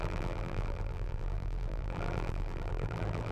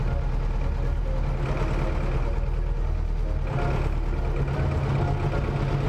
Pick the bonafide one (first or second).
second